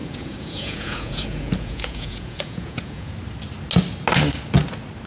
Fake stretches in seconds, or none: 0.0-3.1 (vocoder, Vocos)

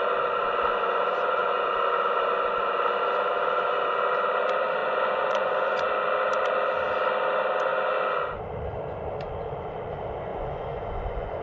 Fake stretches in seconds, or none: 0.7-1.7 (vocoder, Vocos); 4.8-5.9; 10.3-11.4

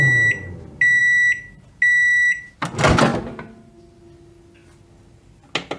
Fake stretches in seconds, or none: none

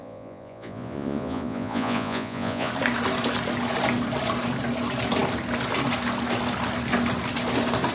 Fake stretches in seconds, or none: 0.0-2.7 (vocoder, Vocos)